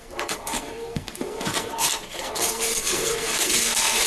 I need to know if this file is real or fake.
fake